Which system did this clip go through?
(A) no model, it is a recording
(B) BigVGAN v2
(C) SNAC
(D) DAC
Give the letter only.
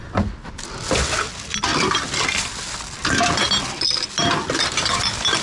A